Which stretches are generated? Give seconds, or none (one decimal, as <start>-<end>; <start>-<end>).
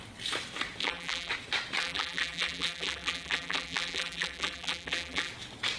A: 0.8-1.3; 1.8-5.3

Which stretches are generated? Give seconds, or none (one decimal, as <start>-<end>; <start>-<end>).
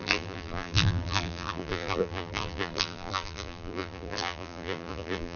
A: 0.0-5.4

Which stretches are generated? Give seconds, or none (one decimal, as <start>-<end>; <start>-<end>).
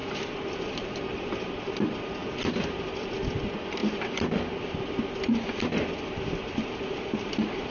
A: 0.0-1.6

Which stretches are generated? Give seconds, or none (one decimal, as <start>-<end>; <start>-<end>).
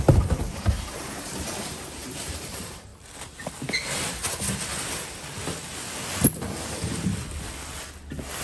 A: 0.0-2.9; 7.9-8.4